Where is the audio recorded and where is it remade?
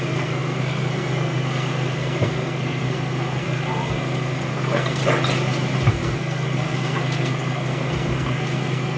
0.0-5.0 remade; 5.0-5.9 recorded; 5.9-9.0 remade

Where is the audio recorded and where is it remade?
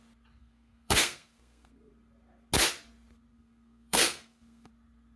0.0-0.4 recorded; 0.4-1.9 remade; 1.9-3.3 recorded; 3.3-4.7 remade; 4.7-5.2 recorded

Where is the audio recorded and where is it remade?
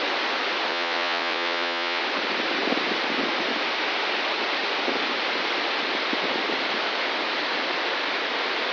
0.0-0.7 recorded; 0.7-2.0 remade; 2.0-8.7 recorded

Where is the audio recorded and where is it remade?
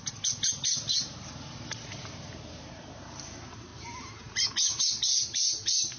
0.0-3.7 remade; 3.7-4.8 recorded; 4.8-6.0 remade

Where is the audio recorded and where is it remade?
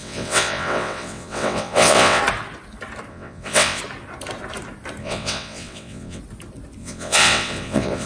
0.0-2.2 remade; 2.2-3.1 recorded; 3.1-3.8 remade; 3.8-5.0 recorded; 5.0-6.2 remade; 6.2-6.8 recorded; 6.8-8.1 remade